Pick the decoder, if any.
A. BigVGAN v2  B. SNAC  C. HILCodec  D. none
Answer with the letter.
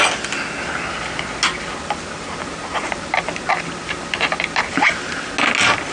D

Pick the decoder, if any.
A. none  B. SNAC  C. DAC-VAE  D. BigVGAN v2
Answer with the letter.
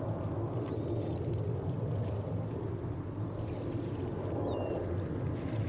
A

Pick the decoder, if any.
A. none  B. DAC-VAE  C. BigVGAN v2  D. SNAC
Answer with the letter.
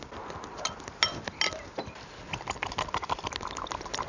A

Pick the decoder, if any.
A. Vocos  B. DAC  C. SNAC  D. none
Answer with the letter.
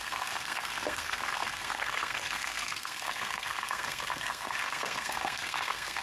C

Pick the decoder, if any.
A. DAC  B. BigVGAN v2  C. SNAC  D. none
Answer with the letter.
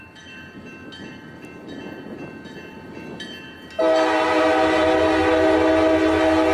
D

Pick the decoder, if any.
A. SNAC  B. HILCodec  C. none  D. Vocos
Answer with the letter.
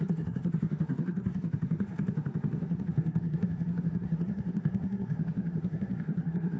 A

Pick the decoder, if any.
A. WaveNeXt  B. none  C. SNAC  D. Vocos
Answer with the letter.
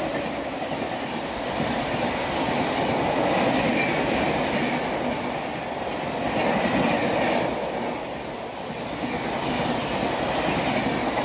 B